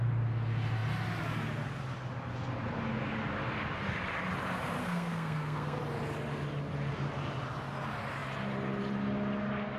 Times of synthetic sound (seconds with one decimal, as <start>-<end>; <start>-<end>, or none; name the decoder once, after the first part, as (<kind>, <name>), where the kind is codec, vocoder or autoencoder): 4.8-5.8 (codec, SNAC)